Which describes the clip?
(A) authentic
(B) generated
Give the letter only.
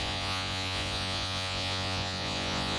B